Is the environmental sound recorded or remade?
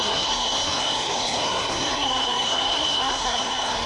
remade